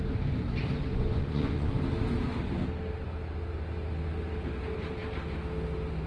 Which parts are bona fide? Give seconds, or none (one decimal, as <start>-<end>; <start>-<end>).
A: 0.0-0.9; 1.7-6.1